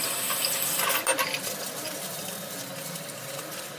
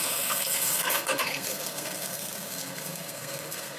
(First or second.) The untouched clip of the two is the first